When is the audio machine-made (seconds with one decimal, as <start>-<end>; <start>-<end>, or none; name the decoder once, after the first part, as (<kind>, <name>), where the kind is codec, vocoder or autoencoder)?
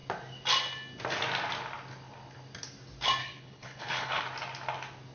3.2-4.2 (codec, HILCodec)